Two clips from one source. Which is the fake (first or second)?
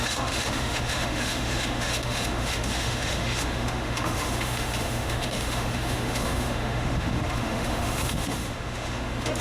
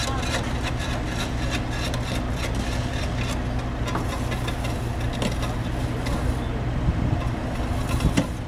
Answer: first